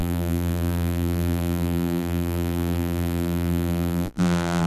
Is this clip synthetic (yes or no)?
yes